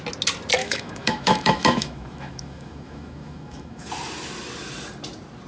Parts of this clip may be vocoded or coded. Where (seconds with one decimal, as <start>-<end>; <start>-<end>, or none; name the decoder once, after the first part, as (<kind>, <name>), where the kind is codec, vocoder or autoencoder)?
0.6-3.9 (autoencoder, DAC-VAE)